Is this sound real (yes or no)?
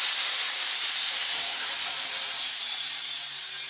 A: no